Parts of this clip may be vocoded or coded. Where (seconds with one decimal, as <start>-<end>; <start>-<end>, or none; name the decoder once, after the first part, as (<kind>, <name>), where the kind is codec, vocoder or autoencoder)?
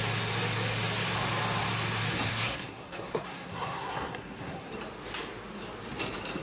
2.3-4.7 (codec, SNAC)